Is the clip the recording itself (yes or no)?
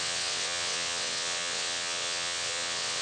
no